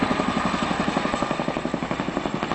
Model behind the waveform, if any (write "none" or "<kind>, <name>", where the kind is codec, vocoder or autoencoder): none